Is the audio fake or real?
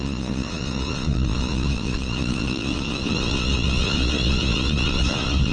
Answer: fake